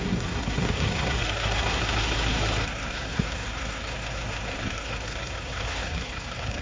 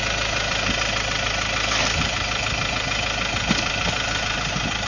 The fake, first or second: first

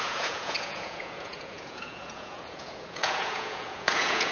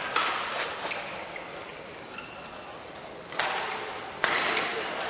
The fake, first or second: first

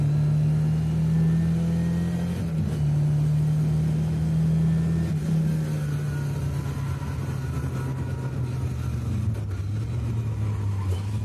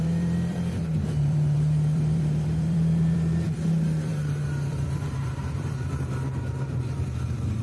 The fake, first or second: second